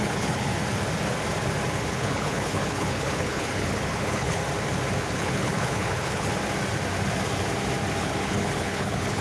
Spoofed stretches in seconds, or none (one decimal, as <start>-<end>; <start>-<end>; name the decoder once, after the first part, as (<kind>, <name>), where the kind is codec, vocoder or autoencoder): 0.0-0.5 (codec, HILCodec); 1.9-4.4; 5.0-6.3; 8.0-9.2